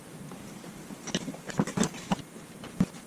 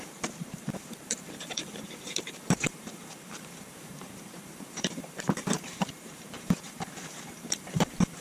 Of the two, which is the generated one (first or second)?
second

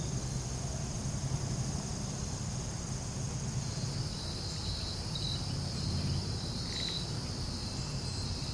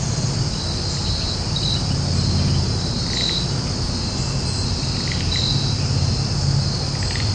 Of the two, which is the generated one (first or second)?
first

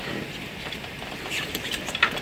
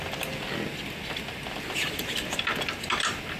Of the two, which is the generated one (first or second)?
first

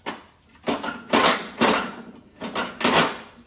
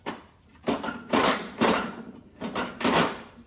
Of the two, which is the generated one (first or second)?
second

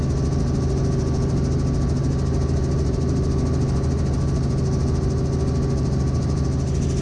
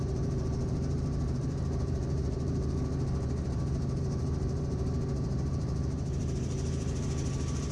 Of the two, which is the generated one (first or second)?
second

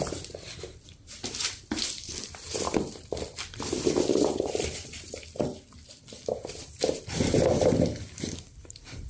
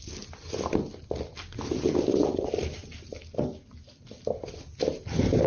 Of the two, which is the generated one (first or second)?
first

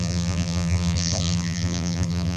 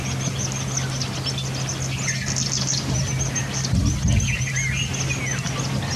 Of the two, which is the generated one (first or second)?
first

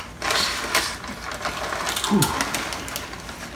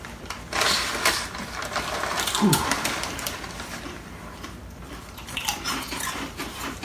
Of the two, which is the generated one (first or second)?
second